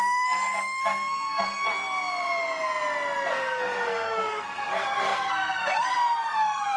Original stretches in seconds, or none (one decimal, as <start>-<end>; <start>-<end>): 1.7-3.3